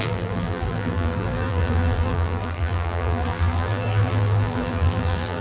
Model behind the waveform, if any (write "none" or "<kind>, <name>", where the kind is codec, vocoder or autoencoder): vocoder, BigVGAN v2